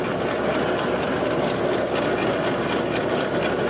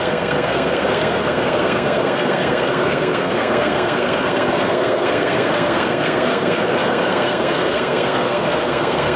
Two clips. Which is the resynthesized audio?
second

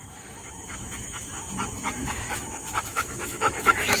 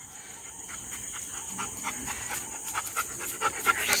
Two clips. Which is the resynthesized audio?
first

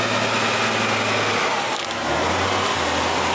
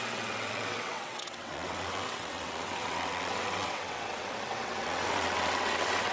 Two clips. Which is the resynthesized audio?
second